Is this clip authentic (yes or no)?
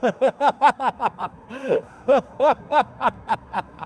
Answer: no